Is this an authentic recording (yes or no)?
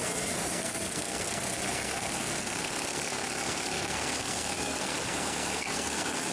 no